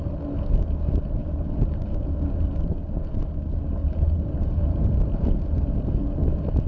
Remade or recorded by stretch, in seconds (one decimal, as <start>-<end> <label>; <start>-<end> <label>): 0.0-1.2 recorded; 1.2-3.2 remade; 3.2-3.8 recorded; 3.8-5.2 remade; 5.2-6.7 recorded